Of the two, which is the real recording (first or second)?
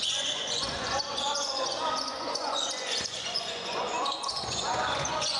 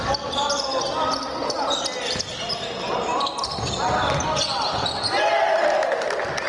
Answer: second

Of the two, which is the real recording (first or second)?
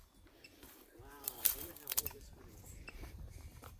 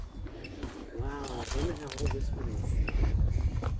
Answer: second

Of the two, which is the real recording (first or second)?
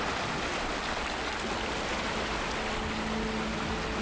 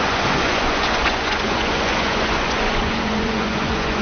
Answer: first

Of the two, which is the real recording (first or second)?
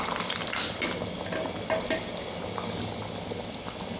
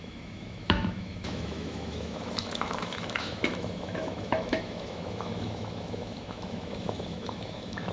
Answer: first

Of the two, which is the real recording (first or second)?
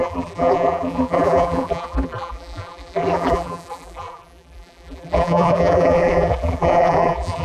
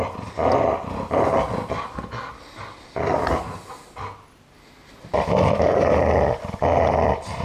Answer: second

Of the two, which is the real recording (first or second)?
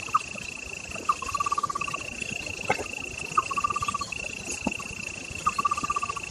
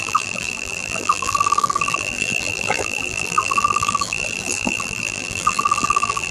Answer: first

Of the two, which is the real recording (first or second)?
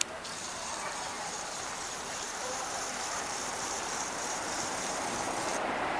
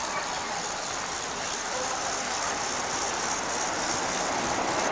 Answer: second